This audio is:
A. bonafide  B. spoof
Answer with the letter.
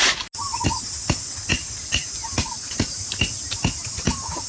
A